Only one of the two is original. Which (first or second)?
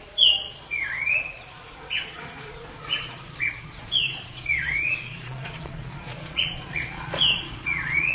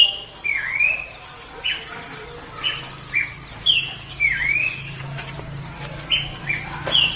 second